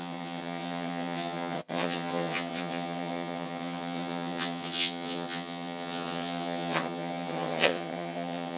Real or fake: fake